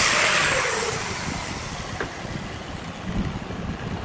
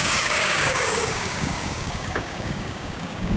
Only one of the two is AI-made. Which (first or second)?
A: second